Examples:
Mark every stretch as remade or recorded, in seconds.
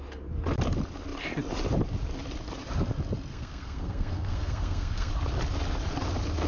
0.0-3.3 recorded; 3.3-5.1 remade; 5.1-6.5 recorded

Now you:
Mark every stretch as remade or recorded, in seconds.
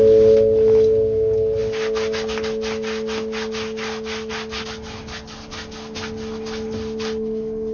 0.0-7.7 recorded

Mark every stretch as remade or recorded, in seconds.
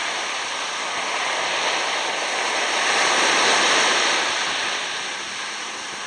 0.0-6.1 recorded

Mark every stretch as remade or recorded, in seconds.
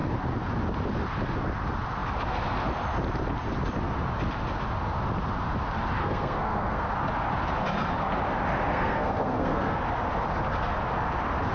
0.0-6.0 recorded; 6.0-6.9 remade; 6.9-8.7 recorded; 8.7-9.8 remade; 9.8-11.5 recorded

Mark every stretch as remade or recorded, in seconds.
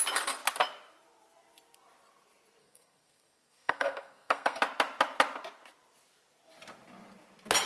0.0-2.6 recorded; 2.6-4.6 remade; 4.6-7.7 recorded